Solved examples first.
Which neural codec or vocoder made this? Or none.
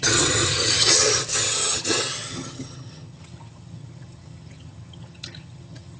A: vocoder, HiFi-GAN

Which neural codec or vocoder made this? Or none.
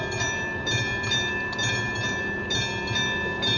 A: none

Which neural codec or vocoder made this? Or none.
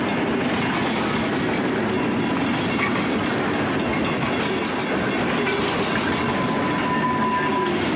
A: none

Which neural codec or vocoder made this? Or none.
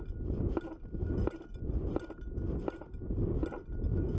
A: none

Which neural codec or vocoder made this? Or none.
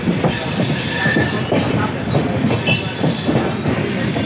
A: vocoder, BigVGAN v2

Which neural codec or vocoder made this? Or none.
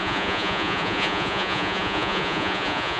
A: vocoder, Vocos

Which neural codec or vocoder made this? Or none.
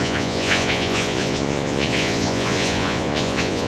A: vocoder, Vocos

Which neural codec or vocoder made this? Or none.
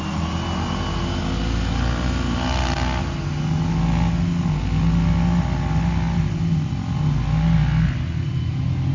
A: none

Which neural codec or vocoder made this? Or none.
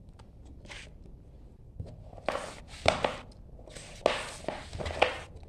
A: none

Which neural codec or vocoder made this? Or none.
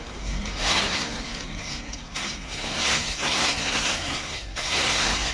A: codec, SNAC